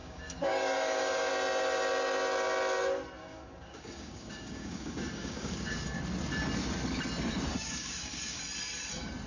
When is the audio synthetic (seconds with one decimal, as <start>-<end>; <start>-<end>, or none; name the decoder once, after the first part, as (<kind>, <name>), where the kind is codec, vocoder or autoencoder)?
0.0-1.3 (codec, DAC); 3.2-6.0; 7.5-8.4